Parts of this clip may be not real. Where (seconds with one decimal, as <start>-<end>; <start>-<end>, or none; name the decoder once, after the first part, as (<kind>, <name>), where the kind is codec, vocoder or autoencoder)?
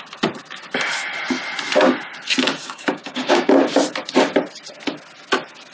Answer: 2.6-3.5 (codec, DAC)